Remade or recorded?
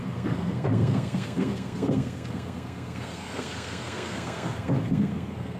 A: remade